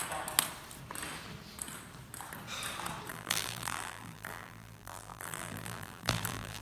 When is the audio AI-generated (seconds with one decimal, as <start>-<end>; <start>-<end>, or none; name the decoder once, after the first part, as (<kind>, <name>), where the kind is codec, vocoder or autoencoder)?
3.1-6.6 (vocoder, BigVGAN v2)